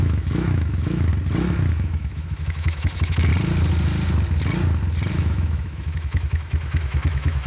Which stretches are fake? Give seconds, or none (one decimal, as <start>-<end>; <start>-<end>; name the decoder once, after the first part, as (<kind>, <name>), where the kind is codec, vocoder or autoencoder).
0.0-1.1 (autoencoder, DAC-VAE); 1.7-3.3; 5.1-7.5